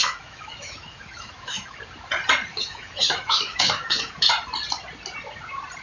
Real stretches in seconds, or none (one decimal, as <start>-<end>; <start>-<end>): 1.8-2.5; 4.3-5.8